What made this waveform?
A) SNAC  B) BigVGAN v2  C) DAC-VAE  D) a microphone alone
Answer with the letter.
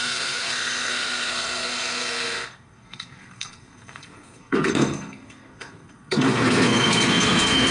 A